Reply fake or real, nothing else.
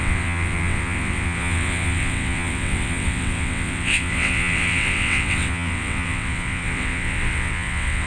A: fake